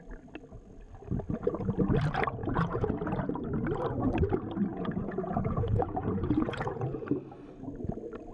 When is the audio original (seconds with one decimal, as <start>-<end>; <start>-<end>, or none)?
0.0-2.4; 3.2-4.7; 7.1-8.3

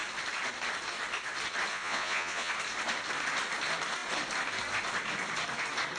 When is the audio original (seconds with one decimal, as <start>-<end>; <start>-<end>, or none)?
0.0-1.7; 2.5-6.0

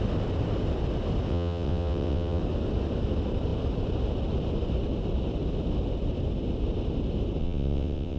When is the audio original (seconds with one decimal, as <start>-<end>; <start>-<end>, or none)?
0.0-1.3; 2.4-7.4

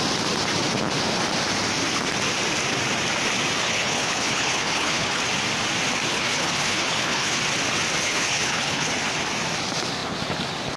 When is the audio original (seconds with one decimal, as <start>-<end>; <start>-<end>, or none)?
0.0-3.6; 5.2-6.1; 7.4-8.0; 8.9-10.8

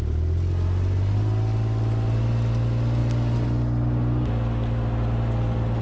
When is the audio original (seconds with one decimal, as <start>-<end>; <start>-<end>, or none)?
0.0-5.8

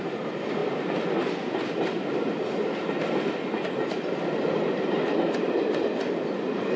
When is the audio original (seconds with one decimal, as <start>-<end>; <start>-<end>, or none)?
0.0-6.8

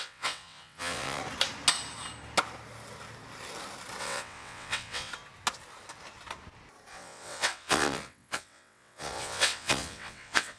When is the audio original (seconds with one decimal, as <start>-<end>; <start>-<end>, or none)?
1.2-4.0; 5.1-6.9